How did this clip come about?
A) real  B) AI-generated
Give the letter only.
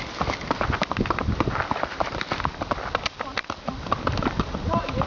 A